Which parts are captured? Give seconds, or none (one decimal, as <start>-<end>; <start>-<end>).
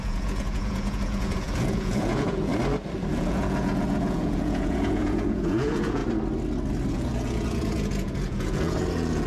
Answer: 2.5-3.1; 6.0-6.9